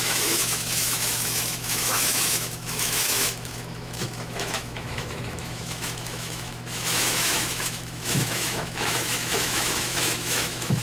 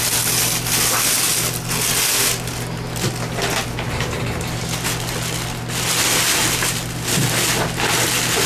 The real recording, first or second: second